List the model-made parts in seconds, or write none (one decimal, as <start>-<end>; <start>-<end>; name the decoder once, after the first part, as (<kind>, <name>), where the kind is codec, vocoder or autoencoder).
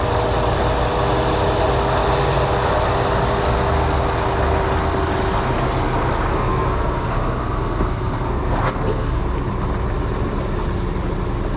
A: 6.3-9.2 (codec, SNAC)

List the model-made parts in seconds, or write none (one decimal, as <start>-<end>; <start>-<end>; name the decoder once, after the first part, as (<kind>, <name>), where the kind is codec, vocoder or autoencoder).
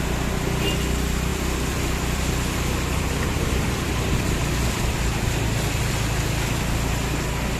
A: 1.3-5.9 (vocoder, BigVGAN v2)